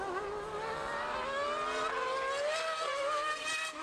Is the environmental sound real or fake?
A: real